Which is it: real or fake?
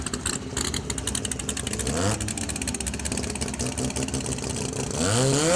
real